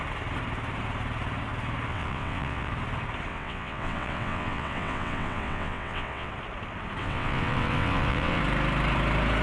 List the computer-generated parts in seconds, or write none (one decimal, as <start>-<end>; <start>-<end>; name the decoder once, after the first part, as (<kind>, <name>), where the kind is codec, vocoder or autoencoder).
1.9-2.7 (vocoder, WaveNeXt); 3.3-6.3; 7.0-8.4